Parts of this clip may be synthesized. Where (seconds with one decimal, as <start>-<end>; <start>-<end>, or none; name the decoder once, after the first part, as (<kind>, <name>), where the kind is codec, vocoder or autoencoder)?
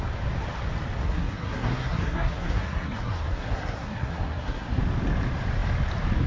1.0-4.8 (codec, SNAC)